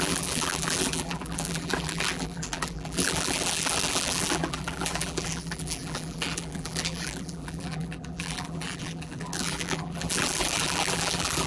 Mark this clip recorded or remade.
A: remade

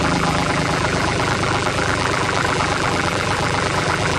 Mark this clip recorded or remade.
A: remade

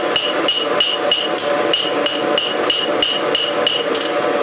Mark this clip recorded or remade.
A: recorded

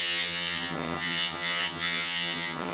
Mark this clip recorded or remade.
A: remade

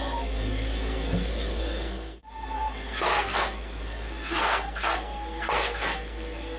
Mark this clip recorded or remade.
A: remade